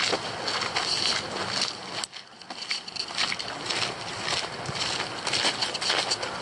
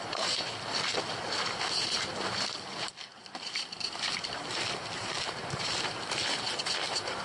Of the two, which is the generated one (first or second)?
second